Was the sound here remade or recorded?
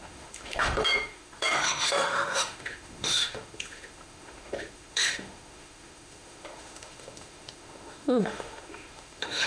remade